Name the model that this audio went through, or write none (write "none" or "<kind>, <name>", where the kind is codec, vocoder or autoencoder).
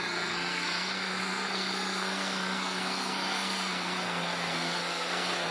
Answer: codec, SNAC